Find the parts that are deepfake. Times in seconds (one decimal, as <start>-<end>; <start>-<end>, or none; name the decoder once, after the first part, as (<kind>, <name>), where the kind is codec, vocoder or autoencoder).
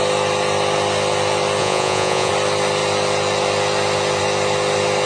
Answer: 1.6-2.3 (vocoder, Vocos)